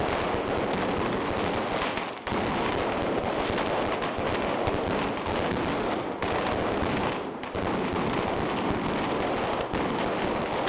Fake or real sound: real